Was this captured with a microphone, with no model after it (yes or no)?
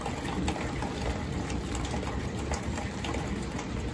yes